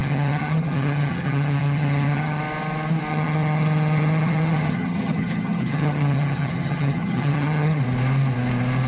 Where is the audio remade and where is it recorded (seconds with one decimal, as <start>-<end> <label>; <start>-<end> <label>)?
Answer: 0.0-2.4 remade; 2.4-3.1 recorded; 3.1-7.8 remade; 7.8-8.9 recorded